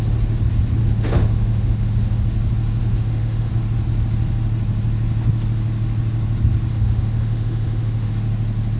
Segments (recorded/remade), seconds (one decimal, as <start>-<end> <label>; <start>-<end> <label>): 0.0-0.8 recorded; 0.8-2.2 remade; 2.2-2.8 recorded; 2.8-3.5 remade; 3.5-6.7 recorded; 6.7-8.1 remade; 8.1-8.8 recorded